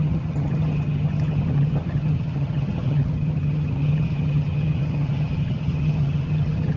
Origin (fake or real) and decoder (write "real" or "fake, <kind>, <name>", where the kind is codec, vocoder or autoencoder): fake, vocoder, HiFi-GAN